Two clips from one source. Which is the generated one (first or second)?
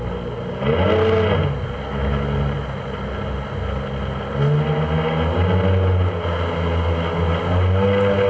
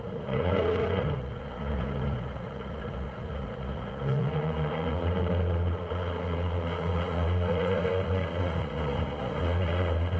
second